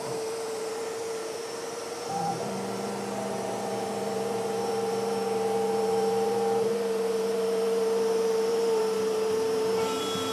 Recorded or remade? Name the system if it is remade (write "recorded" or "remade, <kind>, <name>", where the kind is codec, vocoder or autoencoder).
remade, vocoder, BigVGAN v2